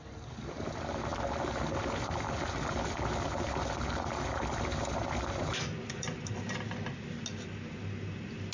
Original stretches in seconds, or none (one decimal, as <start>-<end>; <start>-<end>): 0.0-8.5